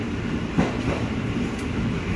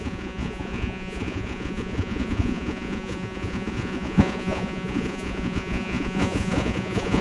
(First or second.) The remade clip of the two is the second